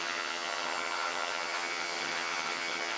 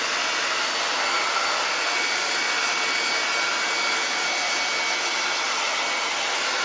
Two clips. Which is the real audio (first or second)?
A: second